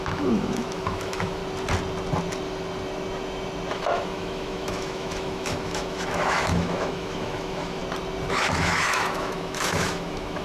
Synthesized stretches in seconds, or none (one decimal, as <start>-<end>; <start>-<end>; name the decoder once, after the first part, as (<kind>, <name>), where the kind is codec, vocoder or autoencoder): 0.0-1.4 (autoencoder, DAC-VAE); 3.7-7.8; 8.3-10.4